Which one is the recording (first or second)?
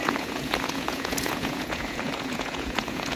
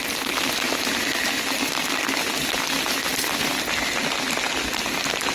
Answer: second